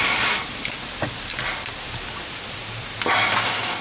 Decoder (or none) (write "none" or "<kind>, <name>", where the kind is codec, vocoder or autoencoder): vocoder, BigVGAN v2